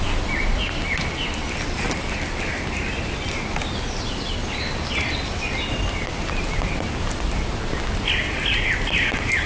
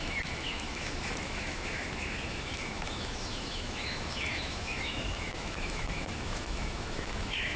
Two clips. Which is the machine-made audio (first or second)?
second